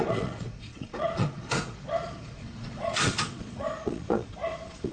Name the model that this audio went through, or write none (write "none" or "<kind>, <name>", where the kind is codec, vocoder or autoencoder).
vocoder, Vocos